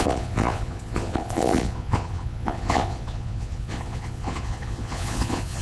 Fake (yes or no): yes